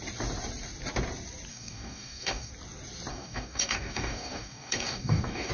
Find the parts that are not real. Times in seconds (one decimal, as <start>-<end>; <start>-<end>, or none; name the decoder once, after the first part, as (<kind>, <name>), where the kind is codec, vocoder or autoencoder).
1.5-2.5 (codec, DAC); 3.1-5.5